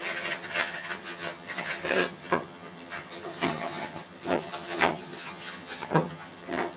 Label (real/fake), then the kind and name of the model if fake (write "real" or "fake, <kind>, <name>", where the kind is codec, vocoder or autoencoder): fake, vocoder, HiFi-GAN